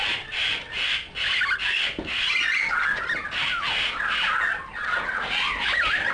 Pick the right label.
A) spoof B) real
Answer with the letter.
B